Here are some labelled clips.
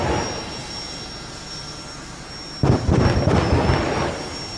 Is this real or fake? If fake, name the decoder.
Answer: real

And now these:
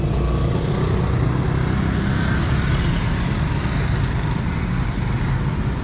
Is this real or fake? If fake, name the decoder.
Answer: real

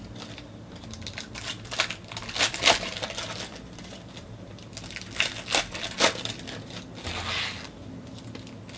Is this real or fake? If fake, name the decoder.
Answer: real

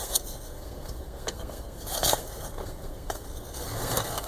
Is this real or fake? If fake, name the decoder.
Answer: fake, codec, SNAC